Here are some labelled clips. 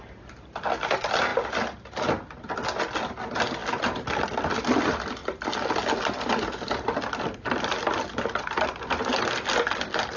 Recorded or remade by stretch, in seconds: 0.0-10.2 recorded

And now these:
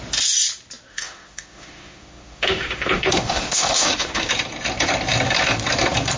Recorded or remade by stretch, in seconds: 0.0-0.9 recorded; 0.9-4.3 remade; 4.3-6.2 recorded

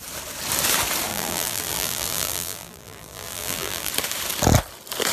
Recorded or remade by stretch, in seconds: 0.0-1.1 recorded; 1.1-3.9 remade; 3.9-5.1 recorded

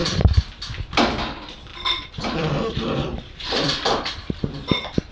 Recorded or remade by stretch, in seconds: 0.0-1.7 recorded; 1.7-5.1 remade

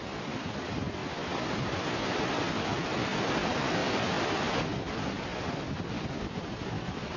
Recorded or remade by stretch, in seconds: 0.0-1.0 remade; 1.0-2.5 recorded; 2.5-3.8 remade; 3.8-5.1 recorded; 5.1-7.2 remade